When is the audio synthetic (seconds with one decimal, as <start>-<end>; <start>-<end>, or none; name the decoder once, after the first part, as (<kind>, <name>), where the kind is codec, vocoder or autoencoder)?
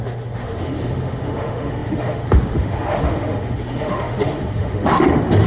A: 0.0-5.5 (autoencoder, DAC-VAE)